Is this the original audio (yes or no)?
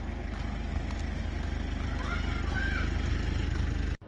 yes